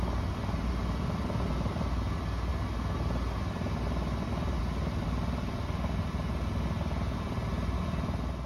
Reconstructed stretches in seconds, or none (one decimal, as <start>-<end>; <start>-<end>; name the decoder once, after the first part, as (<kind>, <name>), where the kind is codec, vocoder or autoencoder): none